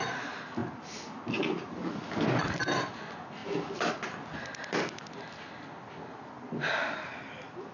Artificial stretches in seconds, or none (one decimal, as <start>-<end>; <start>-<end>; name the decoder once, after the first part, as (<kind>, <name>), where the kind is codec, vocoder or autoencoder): none